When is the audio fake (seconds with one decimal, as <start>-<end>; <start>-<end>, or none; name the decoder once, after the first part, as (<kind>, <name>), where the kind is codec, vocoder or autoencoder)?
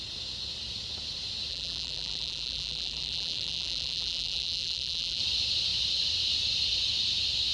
1.5-5.2 (vocoder, BigVGAN v2)